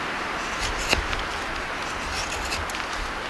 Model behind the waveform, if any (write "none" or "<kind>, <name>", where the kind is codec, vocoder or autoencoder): none